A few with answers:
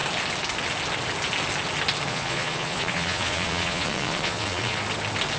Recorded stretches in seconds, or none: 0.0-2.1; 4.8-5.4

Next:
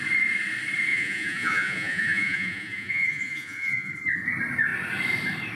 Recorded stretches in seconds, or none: 0.0-0.9; 3.9-5.5

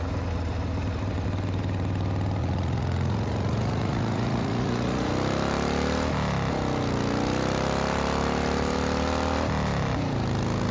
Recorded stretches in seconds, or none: 0.0-2.4; 5.1-10.7

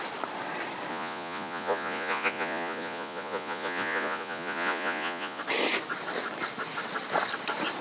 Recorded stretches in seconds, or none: 0.0-0.9; 5.4-7.8

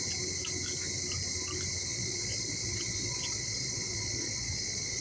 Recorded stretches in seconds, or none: 0.0-1.9

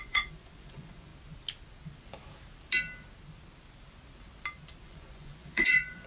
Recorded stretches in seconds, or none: 1.1-4.8